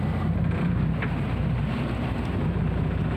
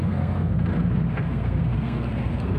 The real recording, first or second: first